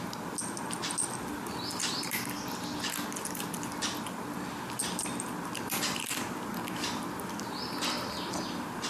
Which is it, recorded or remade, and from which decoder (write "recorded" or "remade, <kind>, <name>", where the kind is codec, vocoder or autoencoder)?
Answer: recorded